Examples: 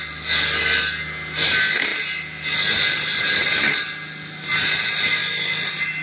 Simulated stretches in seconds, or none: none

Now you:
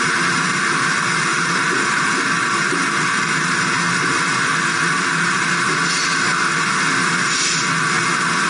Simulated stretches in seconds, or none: 1.3-2.2 (vocoder, BigVGAN v2)

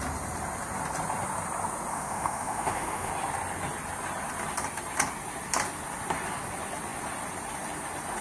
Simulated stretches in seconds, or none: 1.9-3.1 (autoencoder, DAC-VAE)

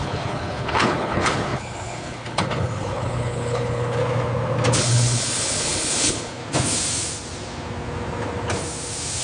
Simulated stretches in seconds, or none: 0.0-4.0 (codec, HILCodec); 4.8-6.4

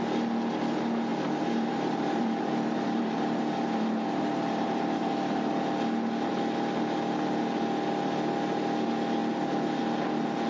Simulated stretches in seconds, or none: 1.1-5.5 (vocoder, BigVGAN v2)

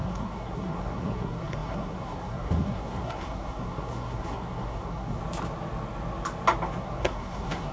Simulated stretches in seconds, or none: 0.0-5.2 (codec, SNAC); 6.8-7.7

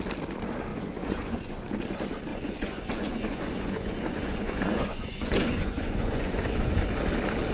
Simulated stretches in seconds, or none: 0.7-1.7 (vocoder, Vocos); 2.3-6.6